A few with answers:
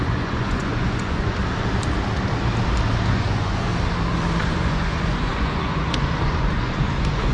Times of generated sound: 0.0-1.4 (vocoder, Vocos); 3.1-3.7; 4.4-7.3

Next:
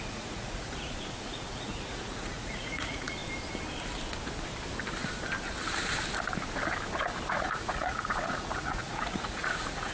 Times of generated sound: 0.0-3.2 (vocoder, Vocos); 7.3-9.9

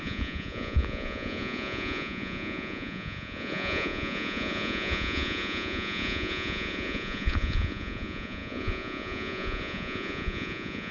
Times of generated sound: 0.0-10.9 (vocoder, Vocos)

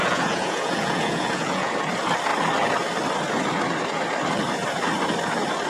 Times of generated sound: 0.0-1.7 (vocoder, Vocos)